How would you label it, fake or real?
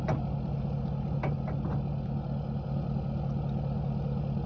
real